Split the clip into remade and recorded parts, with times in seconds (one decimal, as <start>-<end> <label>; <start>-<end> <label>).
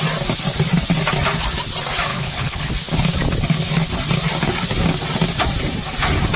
0.0-2.1 recorded; 2.1-2.7 remade; 2.7-6.4 recorded